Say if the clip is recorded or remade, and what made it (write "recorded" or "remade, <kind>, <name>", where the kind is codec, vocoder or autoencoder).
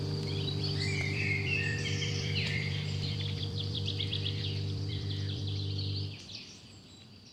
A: remade, vocoder, BigVGAN v2